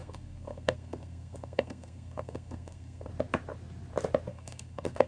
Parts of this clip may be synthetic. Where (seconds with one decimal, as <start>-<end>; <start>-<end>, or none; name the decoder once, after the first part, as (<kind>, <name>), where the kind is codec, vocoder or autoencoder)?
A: 0.0-3.1 (codec, SNAC); 4.3-5.1